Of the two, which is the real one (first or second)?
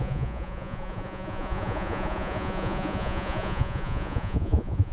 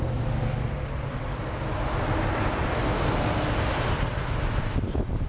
second